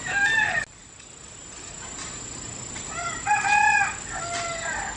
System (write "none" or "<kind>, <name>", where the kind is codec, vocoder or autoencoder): none